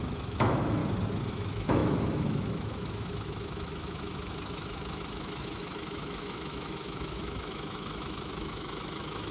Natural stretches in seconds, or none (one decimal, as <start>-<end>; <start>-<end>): 0.8-1.3